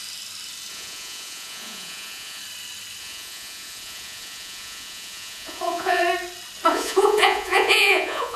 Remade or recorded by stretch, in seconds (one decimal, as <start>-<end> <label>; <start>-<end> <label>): 0.0-0.7 recorded; 0.7-2.4 remade; 2.4-3.0 recorded; 3.0-6.0 remade; 6.0-6.7 recorded; 6.7-8.4 remade